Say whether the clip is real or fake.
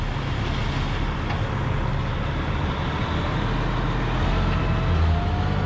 real